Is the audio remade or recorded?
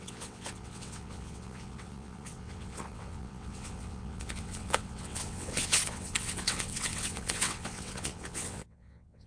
remade